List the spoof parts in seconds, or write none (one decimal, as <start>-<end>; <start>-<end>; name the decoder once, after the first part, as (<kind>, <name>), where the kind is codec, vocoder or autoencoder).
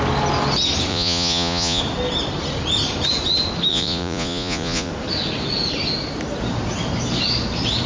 0.9-1.8 (vocoder, Vocos); 3.7-4.9